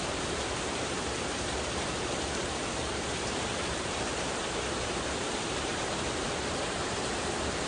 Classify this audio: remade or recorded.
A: remade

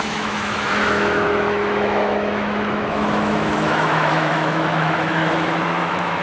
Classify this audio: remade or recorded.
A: remade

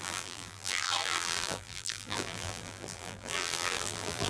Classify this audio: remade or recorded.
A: remade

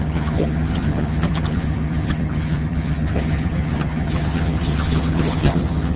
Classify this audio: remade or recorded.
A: remade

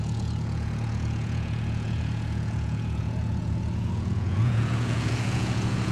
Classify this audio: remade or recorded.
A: remade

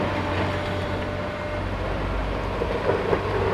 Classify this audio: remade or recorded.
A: recorded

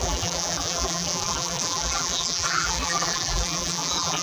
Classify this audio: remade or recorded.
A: remade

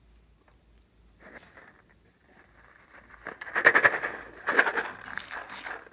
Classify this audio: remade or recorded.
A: recorded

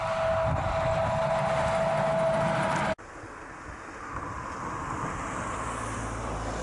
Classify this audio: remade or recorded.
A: recorded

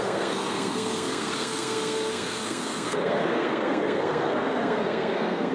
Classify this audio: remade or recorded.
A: remade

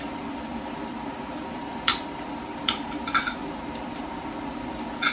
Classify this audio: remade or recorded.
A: remade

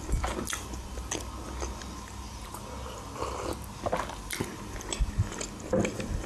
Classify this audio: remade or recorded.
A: recorded